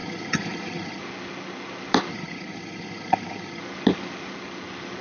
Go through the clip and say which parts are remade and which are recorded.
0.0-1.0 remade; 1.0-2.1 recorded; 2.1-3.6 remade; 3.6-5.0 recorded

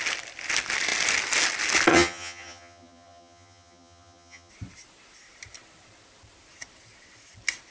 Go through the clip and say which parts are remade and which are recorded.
0.0-1.9 recorded; 1.9-4.5 remade; 4.5-7.7 recorded

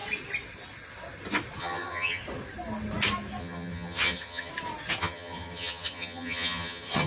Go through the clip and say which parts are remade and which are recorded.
0.0-1.6 recorded; 1.6-2.2 remade; 2.2-3.4 recorded; 3.4-4.5 remade; 4.5-5.0 recorded; 5.0-7.1 remade

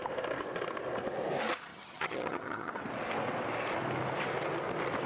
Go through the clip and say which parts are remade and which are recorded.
0.0-1.7 recorded; 1.7-2.7 remade; 2.7-5.1 recorded